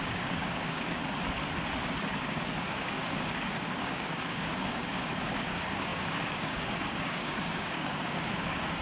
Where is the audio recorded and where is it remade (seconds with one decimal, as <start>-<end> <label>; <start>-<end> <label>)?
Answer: 0.0-1.0 remade; 1.0-2.1 recorded; 2.1-8.8 remade